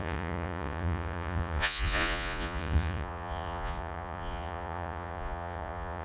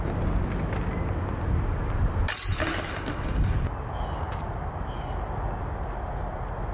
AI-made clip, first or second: first